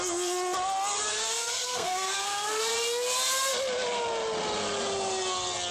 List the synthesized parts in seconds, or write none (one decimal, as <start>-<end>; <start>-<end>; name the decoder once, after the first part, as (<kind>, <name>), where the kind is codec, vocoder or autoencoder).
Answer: 1.1-2.6 (codec, SNAC)